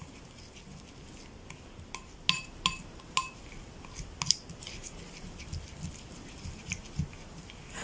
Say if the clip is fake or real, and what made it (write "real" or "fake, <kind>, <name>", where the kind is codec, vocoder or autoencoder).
real